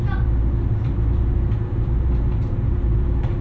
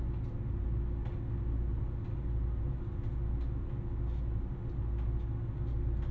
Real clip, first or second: second